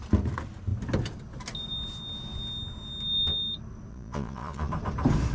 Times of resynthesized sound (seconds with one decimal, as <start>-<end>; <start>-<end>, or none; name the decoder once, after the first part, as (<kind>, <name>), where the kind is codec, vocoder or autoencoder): 3.9-4.7 (vocoder, Vocos)